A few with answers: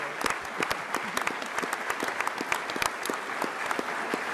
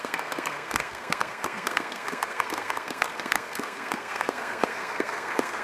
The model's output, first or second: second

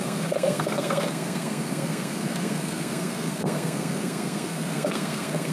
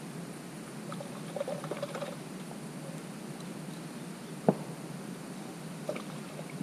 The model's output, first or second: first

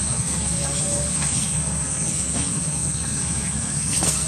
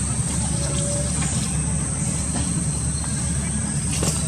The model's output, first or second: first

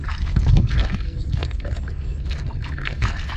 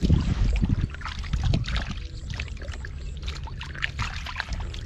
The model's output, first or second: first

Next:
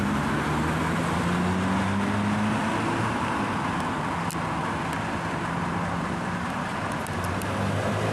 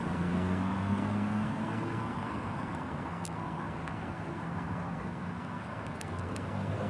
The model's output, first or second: second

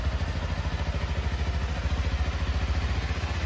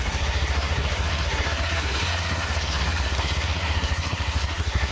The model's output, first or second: second